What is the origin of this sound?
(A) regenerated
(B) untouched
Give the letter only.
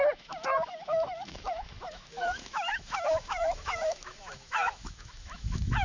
A